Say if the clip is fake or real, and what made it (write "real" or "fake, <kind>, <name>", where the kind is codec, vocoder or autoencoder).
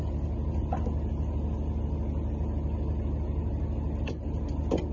real